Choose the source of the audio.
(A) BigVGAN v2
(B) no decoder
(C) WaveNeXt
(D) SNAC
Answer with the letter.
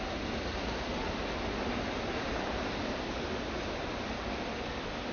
B